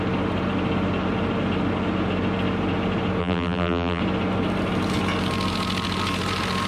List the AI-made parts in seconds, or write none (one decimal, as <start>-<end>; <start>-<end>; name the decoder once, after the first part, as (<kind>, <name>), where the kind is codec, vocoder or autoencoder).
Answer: 3.2-4.0 (vocoder, BigVGAN v2)